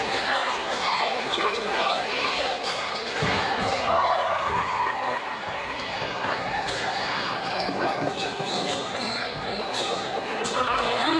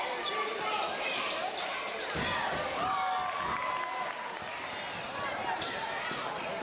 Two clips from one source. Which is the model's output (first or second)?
first